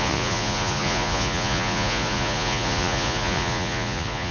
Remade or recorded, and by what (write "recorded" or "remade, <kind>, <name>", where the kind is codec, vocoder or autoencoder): remade, vocoder, Vocos